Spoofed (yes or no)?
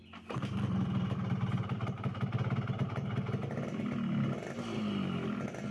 no